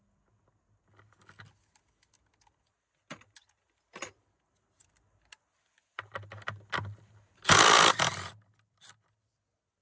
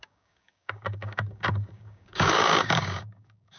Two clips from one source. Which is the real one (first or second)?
first